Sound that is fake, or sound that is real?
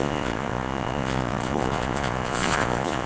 fake